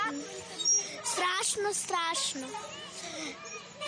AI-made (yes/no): no